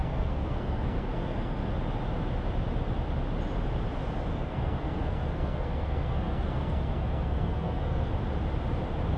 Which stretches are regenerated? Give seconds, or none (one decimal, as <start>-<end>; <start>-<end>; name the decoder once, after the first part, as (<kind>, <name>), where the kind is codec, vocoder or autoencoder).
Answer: 0.0-1.7 (codec, SNAC); 4.3-8.1